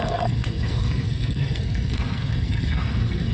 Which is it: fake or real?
fake